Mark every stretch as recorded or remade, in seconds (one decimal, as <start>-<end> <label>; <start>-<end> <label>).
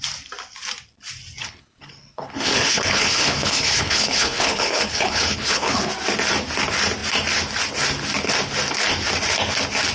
0.0-1.4 recorded; 1.4-5.9 remade; 5.9-9.9 recorded